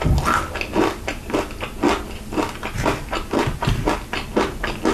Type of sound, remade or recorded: recorded